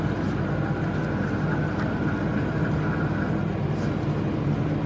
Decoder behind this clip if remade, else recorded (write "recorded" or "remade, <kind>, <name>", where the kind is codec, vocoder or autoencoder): recorded